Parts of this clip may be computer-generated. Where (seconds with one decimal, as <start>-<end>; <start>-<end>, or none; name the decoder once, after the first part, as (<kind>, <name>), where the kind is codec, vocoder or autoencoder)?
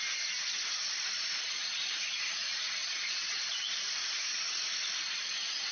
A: 2.8-3.8 (vocoder, Vocos)